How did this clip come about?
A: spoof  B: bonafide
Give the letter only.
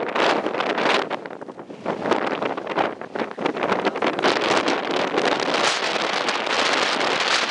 B